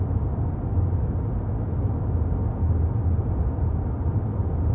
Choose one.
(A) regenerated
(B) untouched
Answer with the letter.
B